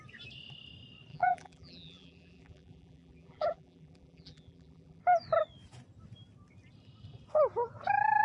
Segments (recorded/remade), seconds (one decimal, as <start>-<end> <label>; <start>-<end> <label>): 0.0-1.1 recorded; 1.1-5.0 remade; 5.0-8.2 recorded